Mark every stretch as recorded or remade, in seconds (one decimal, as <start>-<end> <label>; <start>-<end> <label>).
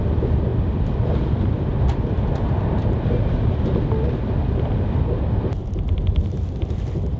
0.0-7.2 recorded